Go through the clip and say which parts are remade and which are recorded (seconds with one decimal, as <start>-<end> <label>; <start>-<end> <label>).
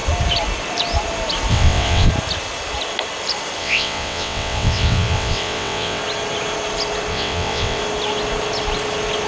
0.0-1.5 recorded; 1.5-2.1 remade; 2.1-3.6 recorded; 3.6-6.0 remade; 6.0-7.1 recorded; 7.1-7.8 remade; 7.8-9.3 recorded